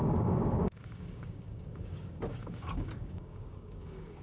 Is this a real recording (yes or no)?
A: no